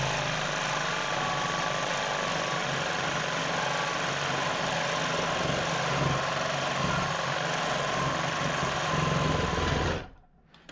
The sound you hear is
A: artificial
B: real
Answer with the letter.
B